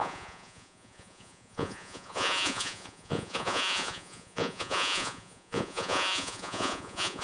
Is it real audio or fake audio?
fake